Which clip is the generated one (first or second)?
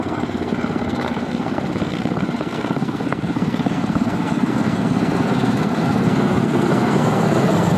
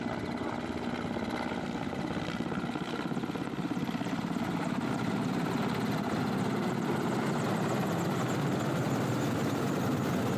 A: first